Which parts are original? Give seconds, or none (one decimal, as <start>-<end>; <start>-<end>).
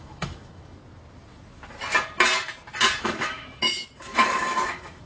0.8-3.0